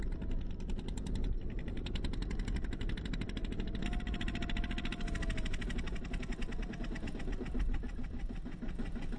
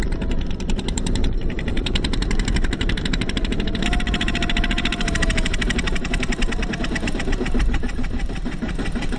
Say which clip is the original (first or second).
first